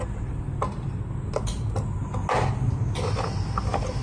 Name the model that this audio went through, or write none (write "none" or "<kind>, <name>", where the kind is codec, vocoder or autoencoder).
none